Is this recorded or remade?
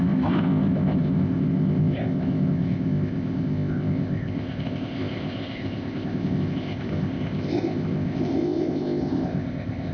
remade